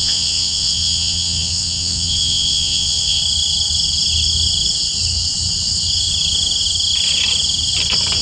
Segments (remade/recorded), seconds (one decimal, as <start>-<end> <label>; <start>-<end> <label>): 0.0-3.2 remade; 3.2-8.2 recorded

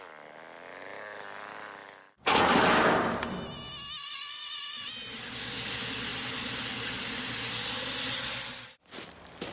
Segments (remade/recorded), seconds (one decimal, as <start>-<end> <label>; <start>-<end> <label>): 0.0-4.0 recorded; 4.0-4.9 remade; 4.9-9.5 recorded

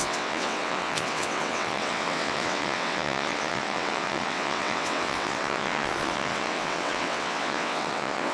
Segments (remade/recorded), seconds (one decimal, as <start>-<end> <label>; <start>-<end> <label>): 0.0-8.3 remade

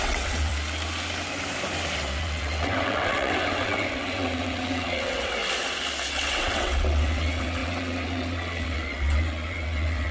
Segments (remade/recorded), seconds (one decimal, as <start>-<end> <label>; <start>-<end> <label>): 0.0-0.5 remade; 0.5-2.2 recorded; 2.2-5.4 remade; 5.4-6.1 recorded; 6.1-10.1 remade

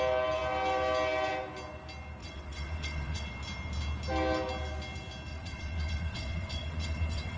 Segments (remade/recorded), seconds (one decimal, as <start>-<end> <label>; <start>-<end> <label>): 0.0-2.2 recorded; 2.2-3.3 remade; 3.3-5.3 recorded; 5.3-7.4 remade

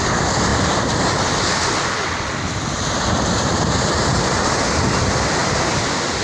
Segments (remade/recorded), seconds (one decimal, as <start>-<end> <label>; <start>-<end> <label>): 0.0-6.2 recorded

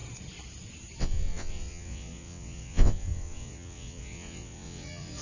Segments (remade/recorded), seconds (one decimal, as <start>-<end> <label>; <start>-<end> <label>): 0.0-1.0 recorded; 1.0-5.2 remade

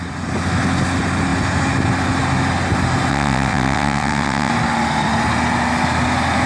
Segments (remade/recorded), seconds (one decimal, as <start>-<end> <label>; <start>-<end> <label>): 0.0-3.1 recorded; 3.1-4.5 remade; 4.5-6.5 recorded